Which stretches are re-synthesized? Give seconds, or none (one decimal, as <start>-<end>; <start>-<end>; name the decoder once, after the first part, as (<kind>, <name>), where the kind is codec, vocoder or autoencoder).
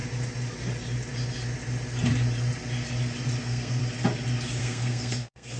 3.4-3.8 (codec, SNAC); 4.6-5.6